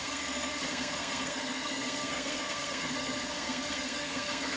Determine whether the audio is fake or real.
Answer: fake